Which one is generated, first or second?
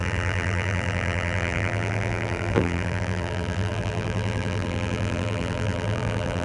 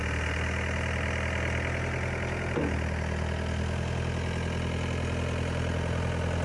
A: first